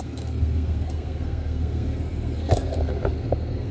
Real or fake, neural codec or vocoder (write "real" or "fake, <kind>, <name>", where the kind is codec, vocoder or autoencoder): fake, codec, SNAC